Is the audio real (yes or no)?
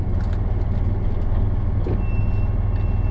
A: yes